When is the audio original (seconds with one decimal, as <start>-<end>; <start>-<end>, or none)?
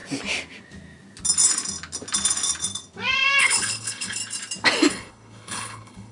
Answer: 0.0-3.4; 4.2-4.9